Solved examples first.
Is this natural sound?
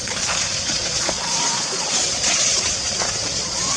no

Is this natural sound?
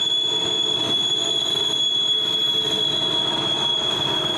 yes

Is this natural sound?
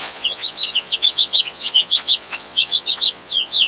no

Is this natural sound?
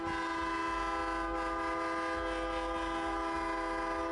yes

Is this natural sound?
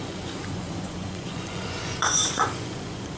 no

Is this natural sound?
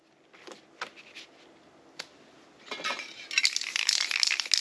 yes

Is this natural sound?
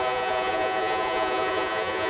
no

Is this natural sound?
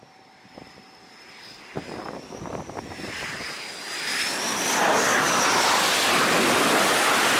yes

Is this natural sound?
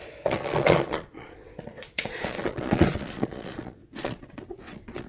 no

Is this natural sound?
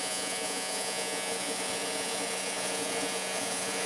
no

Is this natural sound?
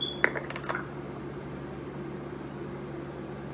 yes